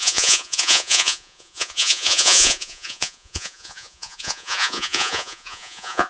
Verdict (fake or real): fake